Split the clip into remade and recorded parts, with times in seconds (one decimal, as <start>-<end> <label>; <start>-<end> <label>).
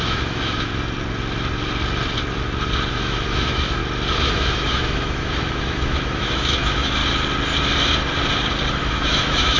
0.0-0.7 remade; 0.7-2.9 recorded; 2.9-3.8 remade; 3.8-4.3 recorded; 4.3-7.0 remade; 7.0-8.7 recorded; 8.7-9.6 remade